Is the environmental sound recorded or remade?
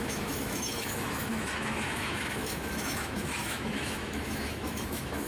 remade